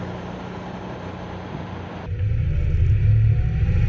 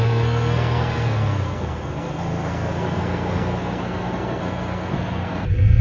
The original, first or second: first